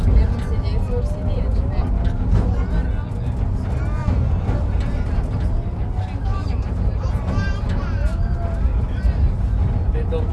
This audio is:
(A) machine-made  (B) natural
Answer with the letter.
B